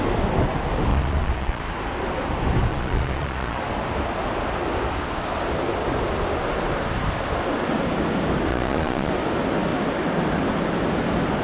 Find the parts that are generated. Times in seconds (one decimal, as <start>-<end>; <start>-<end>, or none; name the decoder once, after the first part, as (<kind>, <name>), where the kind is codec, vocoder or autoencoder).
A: 0.9-1.6 (vocoder, Vocos); 2.7-3.6; 8.5-9.1